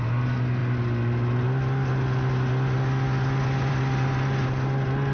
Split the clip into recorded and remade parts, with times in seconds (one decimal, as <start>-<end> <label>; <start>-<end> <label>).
0.0-5.1 recorded